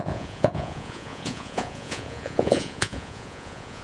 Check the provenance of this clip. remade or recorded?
remade